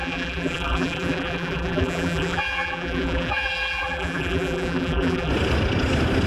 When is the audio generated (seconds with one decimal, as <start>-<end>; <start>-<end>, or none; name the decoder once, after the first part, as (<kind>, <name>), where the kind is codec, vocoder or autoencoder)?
0.0-5.3 (vocoder, BigVGAN v2)